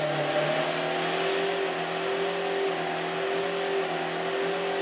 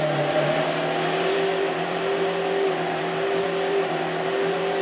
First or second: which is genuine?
first